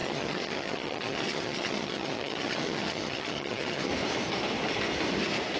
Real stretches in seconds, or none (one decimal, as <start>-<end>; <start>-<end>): 3.9-5.6